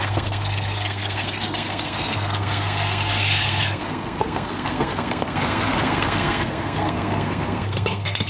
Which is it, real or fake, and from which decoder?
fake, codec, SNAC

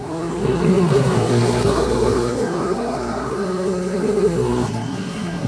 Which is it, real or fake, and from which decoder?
fake, codec, SNAC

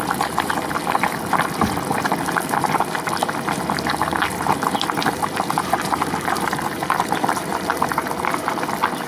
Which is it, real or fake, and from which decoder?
real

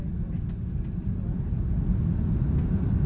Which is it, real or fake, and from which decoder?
real